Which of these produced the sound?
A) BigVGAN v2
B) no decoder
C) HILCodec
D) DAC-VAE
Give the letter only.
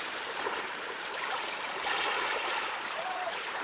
A